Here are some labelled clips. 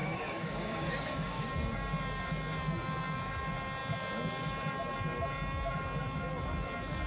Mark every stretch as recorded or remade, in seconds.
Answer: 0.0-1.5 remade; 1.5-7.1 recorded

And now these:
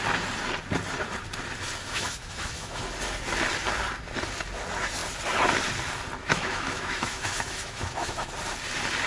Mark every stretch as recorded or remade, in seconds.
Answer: 0.0-1.8 recorded; 1.8-2.8 remade; 2.8-6.2 recorded; 6.2-8.3 remade; 8.3-9.1 recorded

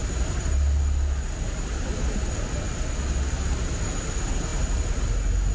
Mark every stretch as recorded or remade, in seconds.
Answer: 0.0-5.5 recorded

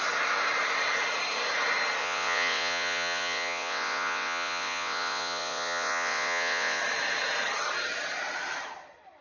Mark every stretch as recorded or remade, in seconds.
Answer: 0.0-2.0 recorded; 2.0-6.8 remade; 6.8-9.2 recorded

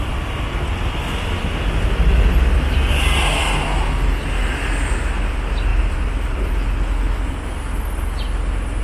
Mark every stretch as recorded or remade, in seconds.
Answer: 0.0-5.7 recorded; 5.7-6.6 remade; 6.6-8.8 recorded